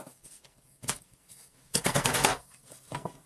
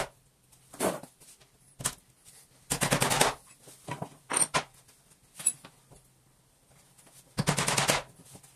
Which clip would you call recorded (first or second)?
second